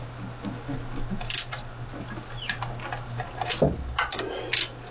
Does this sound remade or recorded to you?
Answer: recorded